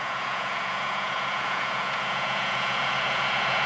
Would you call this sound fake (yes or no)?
yes